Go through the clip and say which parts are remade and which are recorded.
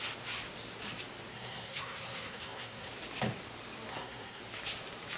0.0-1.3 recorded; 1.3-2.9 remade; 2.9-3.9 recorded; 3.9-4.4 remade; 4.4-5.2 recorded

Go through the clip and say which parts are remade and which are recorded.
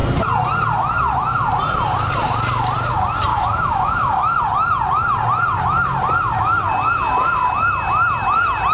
0.0-3.3 recorded; 3.3-4.4 remade; 4.4-8.7 recorded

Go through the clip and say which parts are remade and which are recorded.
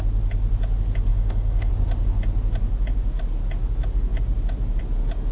0.0-1.1 recorded; 1.1-1.7 remade; 1.7-5.3 recorded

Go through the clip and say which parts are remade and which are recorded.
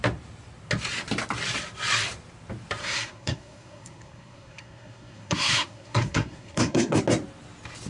0.0-2.8 recorded; 2.8-7.0 remade; 7.0-7.9 recorded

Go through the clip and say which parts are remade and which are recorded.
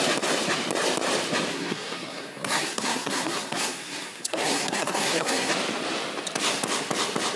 0.0-1.5 recorded; 1.5-5.5 remade; 5.5-7.4 recorded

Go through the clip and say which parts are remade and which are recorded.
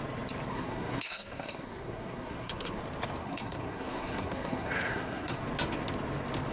0.0-0.5 recorded; 0.5-2.8 remade; 2.8-3.2 recorded; 3.2-5.4 remade; 5.4-6.5 recorded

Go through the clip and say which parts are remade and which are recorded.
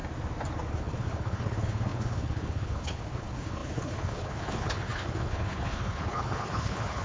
0.0-0.7 recorded; 0.7-7.0 remade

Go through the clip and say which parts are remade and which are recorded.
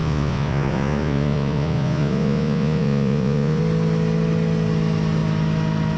0.0-3.6 remade; 3.6-6.0 recorded